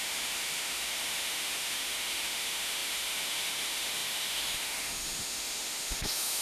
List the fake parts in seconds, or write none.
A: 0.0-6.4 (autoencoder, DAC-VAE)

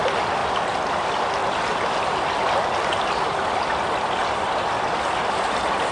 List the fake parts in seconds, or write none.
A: 0.0-0.4 (vocoder, BigVGAN v2); 0.9-5.9

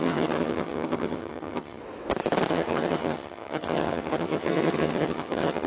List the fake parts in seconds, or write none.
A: 0.0-1.8 (vocoder, HiFi-GAN); 2.5-5.7

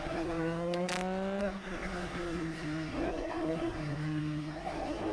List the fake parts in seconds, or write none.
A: 0.0-0.9 (codec, SNAC); 1.4-5.1

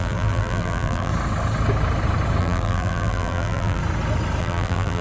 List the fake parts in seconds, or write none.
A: 0.0-1.1 (vocoder, BigVGAN v2); 2.4-3.8; 4.4-5.0

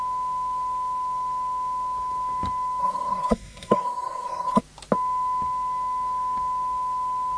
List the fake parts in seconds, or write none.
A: 2.8-4.6 (codec, SNAC)

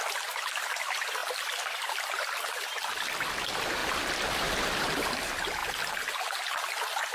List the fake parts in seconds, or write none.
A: 0.0-3.8 (vocoder, BigVGAN v2); 4.6-5.6